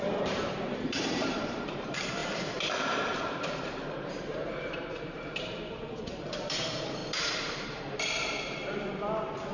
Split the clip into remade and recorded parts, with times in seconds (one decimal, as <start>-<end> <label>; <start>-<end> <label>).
0.0-7.0 remade; 7.0-7.8 recorded; 7.8-8.6 remade; 8.6-9.5 recorded